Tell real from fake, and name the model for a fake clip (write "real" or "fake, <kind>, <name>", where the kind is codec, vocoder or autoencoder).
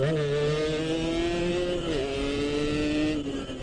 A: real